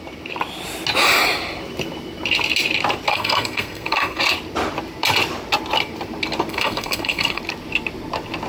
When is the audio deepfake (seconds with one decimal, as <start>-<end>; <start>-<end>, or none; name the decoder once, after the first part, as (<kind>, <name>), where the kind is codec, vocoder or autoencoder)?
3.1-4.2 (codec, SNAC); 6.5-7.4